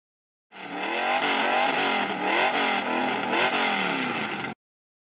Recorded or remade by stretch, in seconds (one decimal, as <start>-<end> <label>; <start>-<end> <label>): 0.0-5.0 recorded